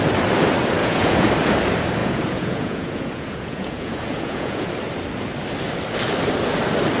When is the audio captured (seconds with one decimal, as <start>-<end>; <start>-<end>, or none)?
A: 0.0-0.8; 1.3-2.0; 4.7-7.0